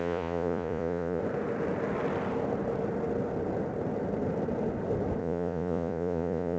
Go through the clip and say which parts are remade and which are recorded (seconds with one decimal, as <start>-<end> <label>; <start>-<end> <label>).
0.0-1.2 remade; 1.2-5.2 recorded; 5.2-6.6 remade